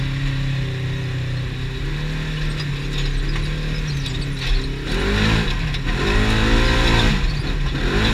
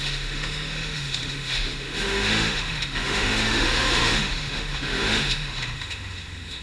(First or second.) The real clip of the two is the first